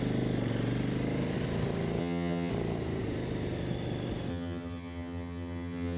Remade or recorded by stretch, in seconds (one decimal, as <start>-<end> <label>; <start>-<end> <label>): 0.0-2.0 recorded; 2.0-2.5 remade; 2.5-4.3 recorded; 4.3-6.0 remade